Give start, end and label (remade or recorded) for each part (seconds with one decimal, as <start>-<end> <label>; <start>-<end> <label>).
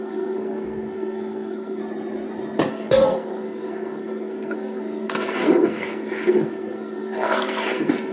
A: 0.0-1.8 remade; 1.8-2.7 recorded; 2.7-8.1 remade